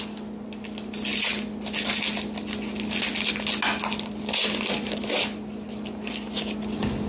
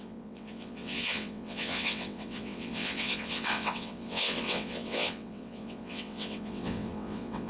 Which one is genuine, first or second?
first